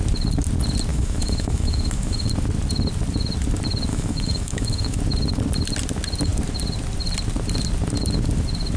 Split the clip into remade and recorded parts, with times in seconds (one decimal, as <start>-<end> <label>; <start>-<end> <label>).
0.0-0.9 recorded; 0.9-2.3 remade; 2.3-3.9 recorded; 3.9-5.0 remade; 5.0-8.8 recorded